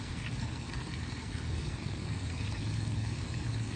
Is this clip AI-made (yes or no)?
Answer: yes